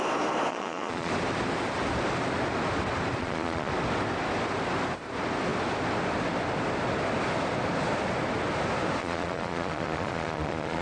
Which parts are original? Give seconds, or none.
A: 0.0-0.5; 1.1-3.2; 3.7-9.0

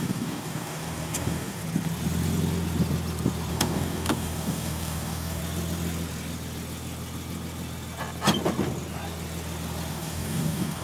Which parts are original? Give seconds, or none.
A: 1.6-3.5; 5.4-9.9

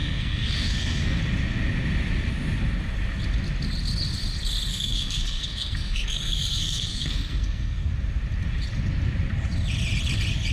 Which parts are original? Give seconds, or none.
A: 1.2-4.7; 7.9-10.5

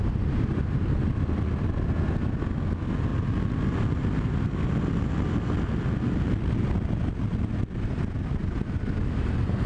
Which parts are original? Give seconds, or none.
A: 0.0-9.7

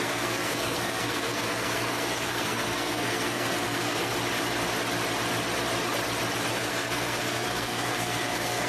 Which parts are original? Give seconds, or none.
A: 4.1-6.5

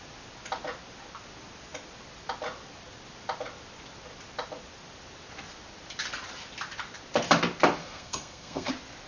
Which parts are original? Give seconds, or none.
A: 0.0-7.8; 8.7-9.1